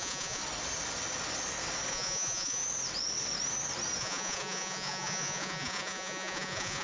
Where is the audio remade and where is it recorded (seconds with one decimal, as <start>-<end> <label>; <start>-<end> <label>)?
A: 0.0-0.4 remade; 0.4-1.9 recorded; 1.9-2.6 remade; 2.6-4.0 recorded; 4.0-6.8 remade